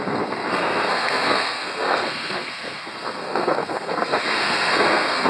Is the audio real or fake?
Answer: fake